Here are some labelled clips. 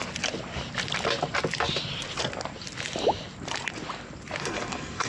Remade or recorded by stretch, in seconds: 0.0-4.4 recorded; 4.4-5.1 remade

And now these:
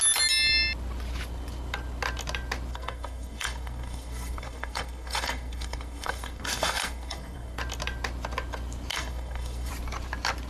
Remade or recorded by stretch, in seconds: 0.0-2.7 recorded; 2.7-7.6 remade; 7.6-8.9 recorded; 8.9-9.7 remade; 9.7-10.5 recorded

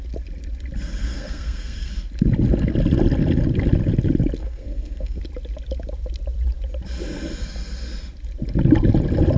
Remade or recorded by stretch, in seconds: 0.0-1.0 recorded; 1.0-1.9 remade; 1.9-4.4 recorded; 4.4-5.2 remade; 5.2-9.4 recorded

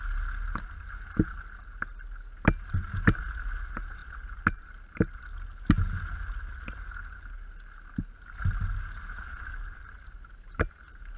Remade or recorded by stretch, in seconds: 0.0-11.2 recorded